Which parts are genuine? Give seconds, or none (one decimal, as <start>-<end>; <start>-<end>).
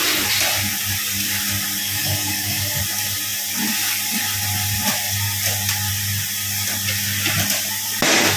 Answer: 0.0-1.8; 2.8-8.4